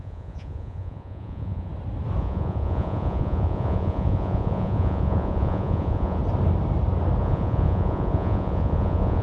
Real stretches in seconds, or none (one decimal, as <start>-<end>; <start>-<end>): 1.7-2.2; 6.2-7.2